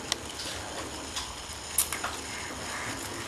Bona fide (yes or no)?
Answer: yes